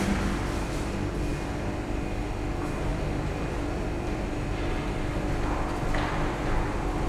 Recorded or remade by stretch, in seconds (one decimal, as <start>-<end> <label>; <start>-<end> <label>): 0.0-1.3 recorded; 1.3-2.2 remade; 2.2-2.9 recorded; 2.9-7.1 remade